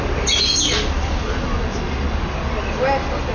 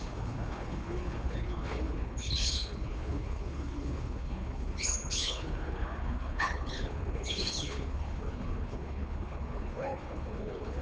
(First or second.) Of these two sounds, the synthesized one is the second